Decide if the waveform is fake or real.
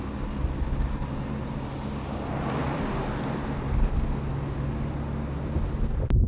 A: real